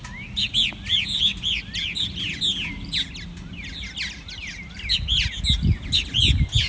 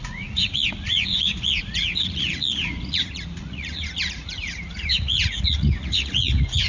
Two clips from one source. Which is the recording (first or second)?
first